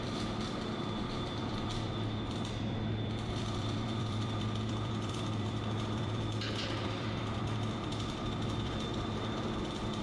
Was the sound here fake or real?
fake